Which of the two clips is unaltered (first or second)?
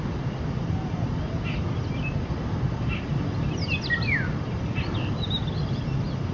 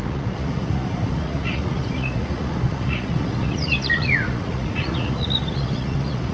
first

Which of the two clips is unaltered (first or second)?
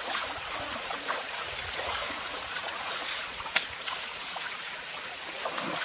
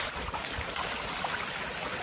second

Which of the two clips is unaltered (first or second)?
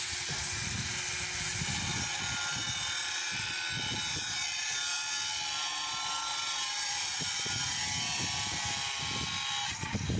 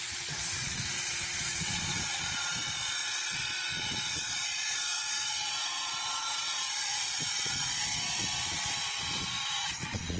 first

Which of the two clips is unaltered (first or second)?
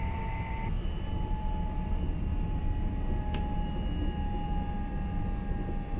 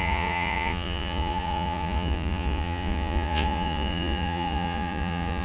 first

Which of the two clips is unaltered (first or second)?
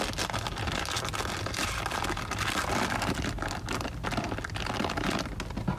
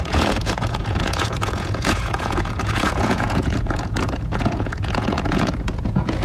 first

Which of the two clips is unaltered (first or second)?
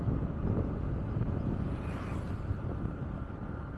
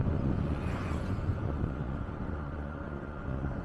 first